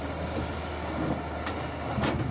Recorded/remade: recorded